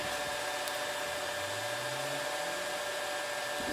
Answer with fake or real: real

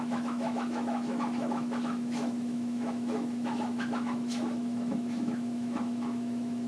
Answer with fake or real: fake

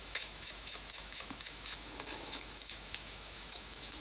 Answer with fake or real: fake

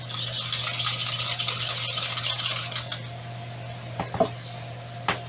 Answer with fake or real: real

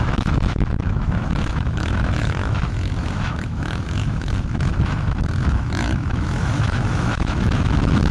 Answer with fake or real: fake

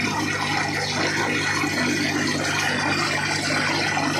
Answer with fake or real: real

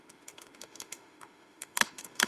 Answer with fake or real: fake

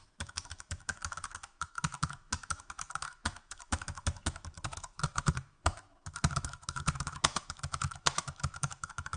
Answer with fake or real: fake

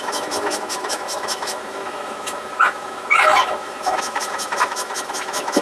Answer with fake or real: fake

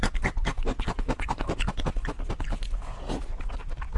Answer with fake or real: real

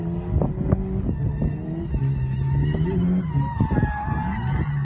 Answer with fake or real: real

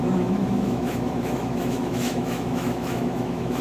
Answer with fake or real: fake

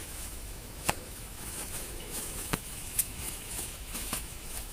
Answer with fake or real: fake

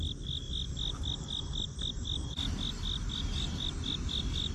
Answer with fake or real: real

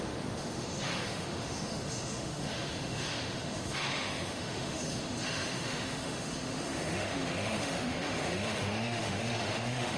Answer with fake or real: fake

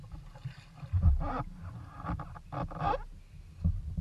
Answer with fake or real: real